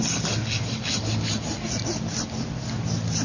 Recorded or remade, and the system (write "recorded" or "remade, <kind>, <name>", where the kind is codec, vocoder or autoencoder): recorded